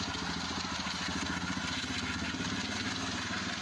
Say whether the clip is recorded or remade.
recorded